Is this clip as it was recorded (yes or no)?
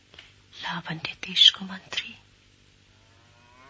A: yes